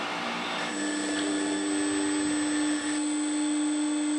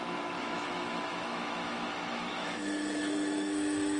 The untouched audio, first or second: first